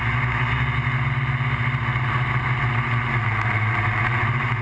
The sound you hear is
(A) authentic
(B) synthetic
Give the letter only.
A